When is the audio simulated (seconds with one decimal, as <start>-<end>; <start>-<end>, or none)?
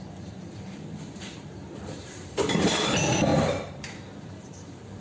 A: 0.0-5.0